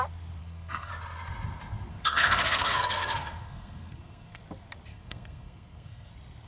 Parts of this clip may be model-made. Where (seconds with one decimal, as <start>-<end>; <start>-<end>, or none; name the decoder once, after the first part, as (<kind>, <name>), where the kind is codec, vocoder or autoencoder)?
0.4-0.9 (codec, SNAC); 1.9-4.4; 4.9-6.1